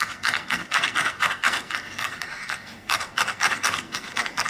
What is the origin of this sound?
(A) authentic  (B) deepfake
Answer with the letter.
B